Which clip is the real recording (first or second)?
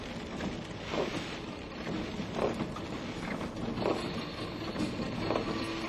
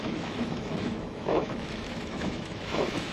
first